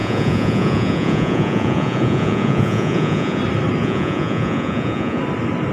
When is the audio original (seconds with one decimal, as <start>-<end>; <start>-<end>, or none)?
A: 3.4-3.8; 5.2-5.7